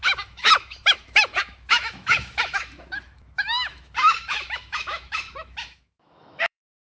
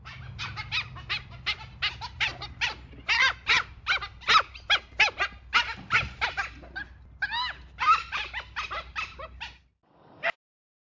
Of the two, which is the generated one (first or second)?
first